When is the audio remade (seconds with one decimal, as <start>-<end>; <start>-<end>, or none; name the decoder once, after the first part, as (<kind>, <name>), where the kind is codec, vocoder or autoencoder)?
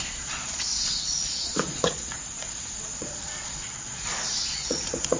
0.0-5.2 (vocoder, Vocos)